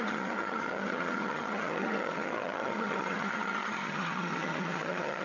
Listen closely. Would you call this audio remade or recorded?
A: remade